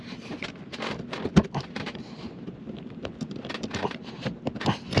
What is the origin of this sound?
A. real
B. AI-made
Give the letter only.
A